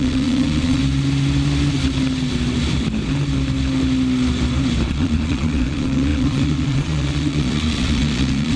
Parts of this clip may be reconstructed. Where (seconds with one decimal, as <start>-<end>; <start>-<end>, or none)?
0.0-0.8; 4.9-8.6